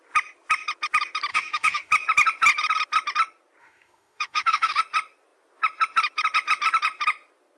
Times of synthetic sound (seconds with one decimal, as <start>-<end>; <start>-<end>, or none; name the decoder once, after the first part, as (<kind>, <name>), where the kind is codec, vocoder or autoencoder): 1.3-1.9 (autoencoder, DAC-VAE); 3.6-4.8